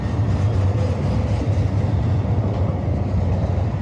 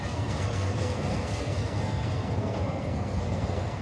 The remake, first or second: second